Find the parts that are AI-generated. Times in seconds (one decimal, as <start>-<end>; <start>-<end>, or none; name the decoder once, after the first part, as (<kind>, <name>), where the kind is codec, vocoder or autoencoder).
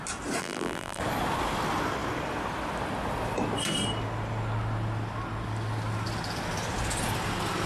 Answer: 0.4-1.0 (vocoder, BigVGAN v2)